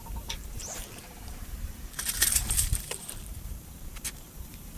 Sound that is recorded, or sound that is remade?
remade